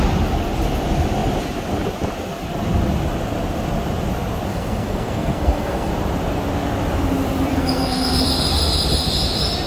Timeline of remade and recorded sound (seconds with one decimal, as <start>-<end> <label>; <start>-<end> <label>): 0.0-4.5 recorded; 4.5-5.9 remade; 5.9-7.5 recorded; 7.5-8.2 remade; 8.2-9.7 recorded